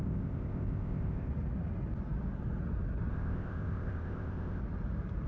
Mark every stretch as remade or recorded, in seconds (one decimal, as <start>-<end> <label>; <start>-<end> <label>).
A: 0.0-1.3 remade; 1.3-3.1 recorded; 3.1-4.6 remade; 4.6-5.3 recorded

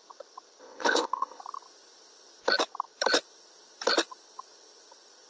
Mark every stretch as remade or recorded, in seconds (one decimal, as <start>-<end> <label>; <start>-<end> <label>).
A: 0.0-0.6 recorded; 0.6-1.4 remade; 1.4-5.3 recorded

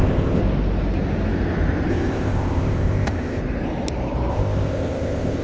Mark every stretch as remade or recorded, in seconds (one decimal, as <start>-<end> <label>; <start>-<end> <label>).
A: 0.0-0.4 remade; 0.4-1.9 recorded; 1.9-3.4 remade; 3.4-4.3 recorded; 4.3-5.4 remade